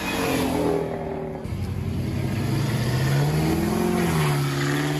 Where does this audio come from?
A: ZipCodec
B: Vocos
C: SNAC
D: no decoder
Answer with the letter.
D